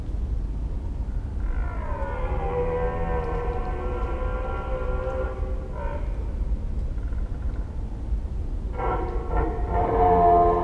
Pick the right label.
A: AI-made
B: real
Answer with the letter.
B